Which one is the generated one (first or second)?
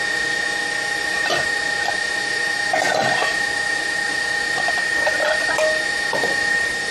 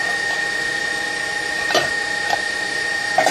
second